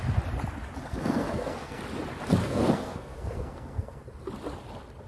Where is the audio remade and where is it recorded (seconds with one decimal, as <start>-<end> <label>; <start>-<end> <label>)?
0.0-0.9 recorded; 0.9-1.8 remade; 1.8-2.4 recorded; 2.4-4.0 remade; 4.0-5.1 recorded